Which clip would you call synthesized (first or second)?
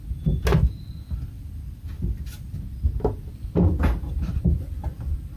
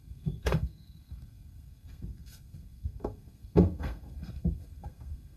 second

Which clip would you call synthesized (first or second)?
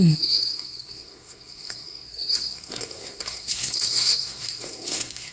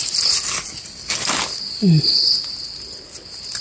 first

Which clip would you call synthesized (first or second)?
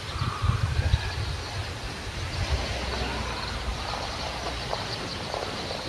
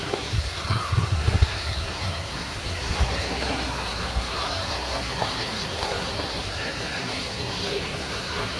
second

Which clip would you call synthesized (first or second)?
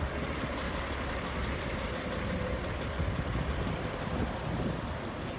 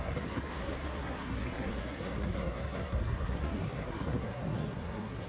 second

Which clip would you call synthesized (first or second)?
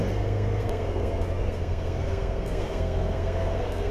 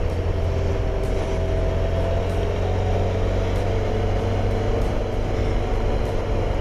first